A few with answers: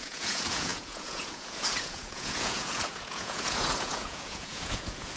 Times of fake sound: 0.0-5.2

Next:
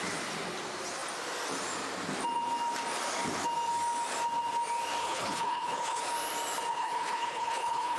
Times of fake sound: 5.0-6.0; 6.7-8.0